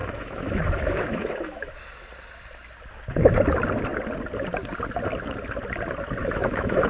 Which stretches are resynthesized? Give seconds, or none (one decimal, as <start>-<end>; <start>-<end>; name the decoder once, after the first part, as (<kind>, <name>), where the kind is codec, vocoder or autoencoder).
0.0-1.7 (autoencoder, DAC-VAE); 6.2-6.9